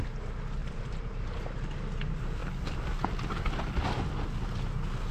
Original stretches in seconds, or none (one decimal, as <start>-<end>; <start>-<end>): 0.0-0.6; 1.5-5.1